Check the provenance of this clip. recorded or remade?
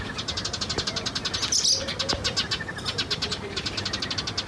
recorded